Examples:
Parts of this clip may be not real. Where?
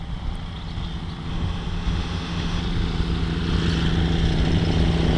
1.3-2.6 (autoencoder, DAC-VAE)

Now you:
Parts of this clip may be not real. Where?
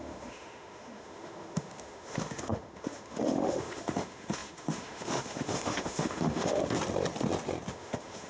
0.0-6.6 (autoencoder, DAC-VAE); 7.7-8.3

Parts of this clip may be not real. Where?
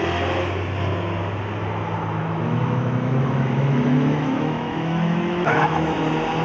2.2-6.0 (autoencoder, DAC-VAE)